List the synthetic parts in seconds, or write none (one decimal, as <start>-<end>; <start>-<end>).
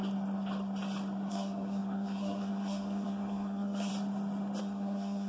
1.3-3.9; 4.6-5.3